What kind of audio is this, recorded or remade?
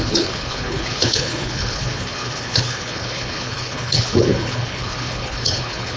remade